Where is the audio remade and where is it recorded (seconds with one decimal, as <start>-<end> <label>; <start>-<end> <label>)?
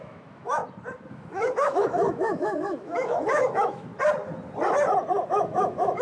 0.0-0.6 remade; 0.6-1.1 recorded; 1.1-3.9 remade; 3.9-5.3 recorded; 5.3-6.0 remade